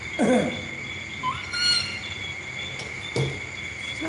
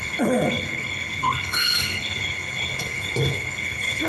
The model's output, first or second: second